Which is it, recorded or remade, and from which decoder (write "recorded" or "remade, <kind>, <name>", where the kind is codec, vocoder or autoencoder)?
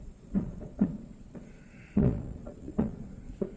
remade, vocoder, Vocos